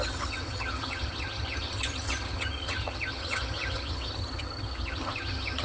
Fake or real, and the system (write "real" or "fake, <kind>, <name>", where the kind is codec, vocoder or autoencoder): fake, vocoder, HiFi-GAN